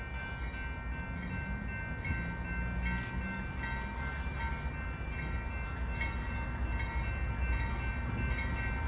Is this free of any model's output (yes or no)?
yes